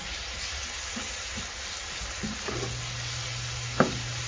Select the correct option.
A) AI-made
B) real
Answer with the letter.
B